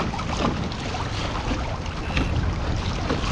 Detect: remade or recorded recorded